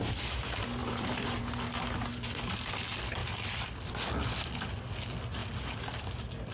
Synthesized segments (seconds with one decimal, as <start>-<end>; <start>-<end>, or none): 0.8-1.4; 2.1-2.7; 3.2-3.9; 5.4-6.0